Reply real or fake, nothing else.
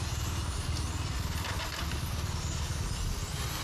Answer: real